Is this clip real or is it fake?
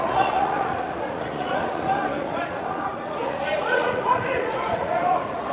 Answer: fake